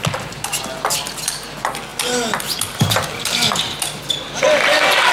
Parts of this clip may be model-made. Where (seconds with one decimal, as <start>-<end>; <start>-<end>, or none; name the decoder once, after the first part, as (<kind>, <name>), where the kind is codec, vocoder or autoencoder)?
none